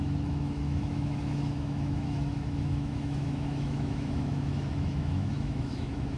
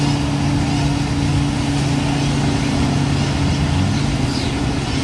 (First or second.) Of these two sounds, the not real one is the first